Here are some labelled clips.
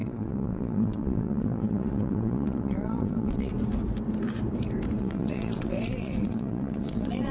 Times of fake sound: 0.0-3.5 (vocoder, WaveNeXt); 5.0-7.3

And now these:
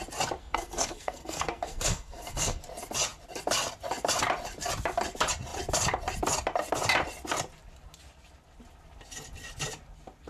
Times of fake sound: 0.4-2.6 (codec, SNAC)

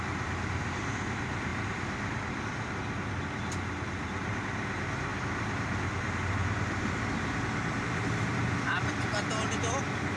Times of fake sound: 1.5-2.7 (vocoder, BigVGAN v2); 5.1-9.5

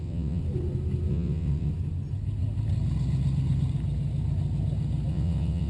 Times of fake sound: 0.0-0.4 (vocoder, WaveNeXt); 1.1-1.7; 5.1-5.7

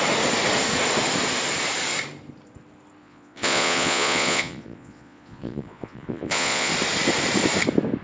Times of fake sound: 3.0-6.7 (vocoder, Vocos)

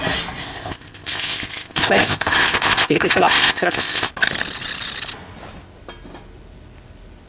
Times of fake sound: 0.4-4.1 (codec, ZipCodec)

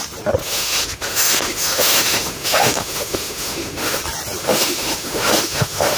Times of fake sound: 0.4-4.0 (autoencoder, DAC-VAE); 4.4-6.0

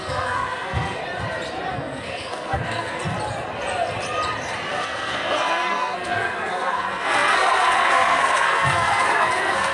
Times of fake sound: 0.0-1.0 (codec, SNAC); 1.7-3.0; 4.7-9.7